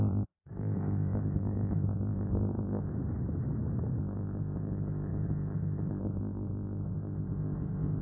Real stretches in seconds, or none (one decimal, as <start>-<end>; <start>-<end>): 2.9-4.0